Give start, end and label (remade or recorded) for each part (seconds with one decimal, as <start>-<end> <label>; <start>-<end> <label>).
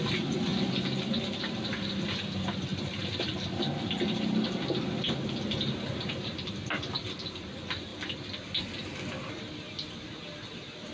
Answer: 0.0-10.9 recorded